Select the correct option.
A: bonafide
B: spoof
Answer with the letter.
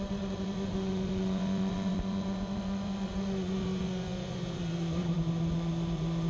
B